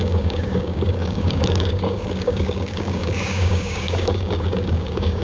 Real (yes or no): no